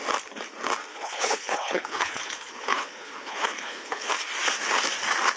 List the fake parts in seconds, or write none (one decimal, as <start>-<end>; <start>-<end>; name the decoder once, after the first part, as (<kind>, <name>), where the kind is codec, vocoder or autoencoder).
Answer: 0.9-4.1 (codec, HILCodec)